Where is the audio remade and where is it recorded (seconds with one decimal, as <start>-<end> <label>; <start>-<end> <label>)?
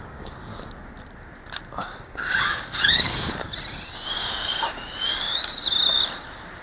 0.0-0.5 remade; 0.5-2.0 recorded; 2.0-3.1 remade; 3.1-4.2 recorded; 4.2-5.6 remade; 5.6-6.6 recorded